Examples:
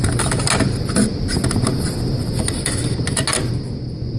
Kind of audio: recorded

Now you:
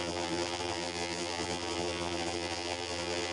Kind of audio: remade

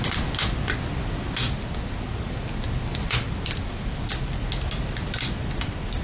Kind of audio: recorded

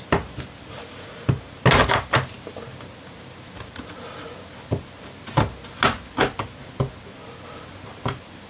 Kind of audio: recorded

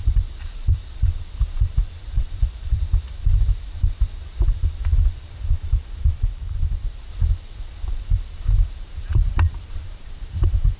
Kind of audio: remade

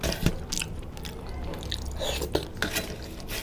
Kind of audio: recorded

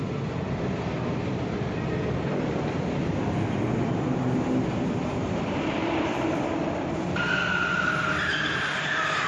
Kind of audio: remade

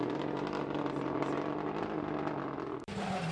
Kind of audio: remade